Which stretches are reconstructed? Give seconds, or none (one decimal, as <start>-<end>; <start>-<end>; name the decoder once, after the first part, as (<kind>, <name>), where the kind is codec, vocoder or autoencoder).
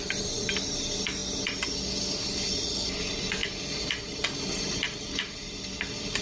none